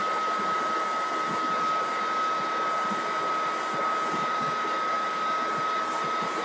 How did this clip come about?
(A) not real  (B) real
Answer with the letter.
B